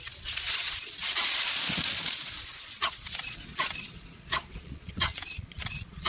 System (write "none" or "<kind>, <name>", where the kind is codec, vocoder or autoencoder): vocoder, Vocos